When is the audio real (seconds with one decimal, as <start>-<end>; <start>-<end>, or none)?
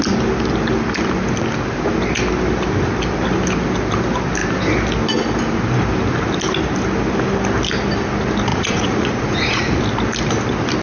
0.0-8.5; 9.8-10.8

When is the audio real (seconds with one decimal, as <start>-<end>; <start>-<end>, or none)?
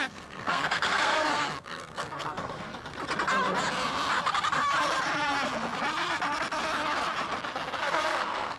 2.7-7.8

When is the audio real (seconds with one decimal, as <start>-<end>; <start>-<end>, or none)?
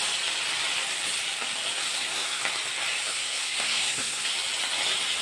0.0-1.9; 2.4-3.1; 4.3-5.2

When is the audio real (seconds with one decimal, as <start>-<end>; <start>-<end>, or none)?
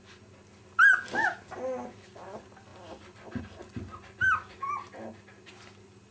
0.0-6.1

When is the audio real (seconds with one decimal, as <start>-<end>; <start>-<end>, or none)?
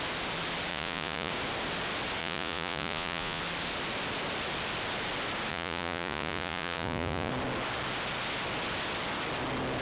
0.0-0.7; 1.3-2.2; 3.4-5.5; 7.3-9.8